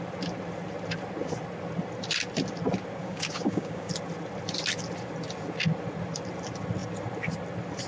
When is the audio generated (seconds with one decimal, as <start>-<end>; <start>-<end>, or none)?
3.0-3.9